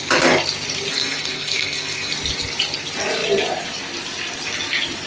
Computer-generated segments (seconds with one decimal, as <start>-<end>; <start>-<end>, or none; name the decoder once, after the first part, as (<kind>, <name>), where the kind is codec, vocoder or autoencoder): 0.9-2.1 (codec, SNAC)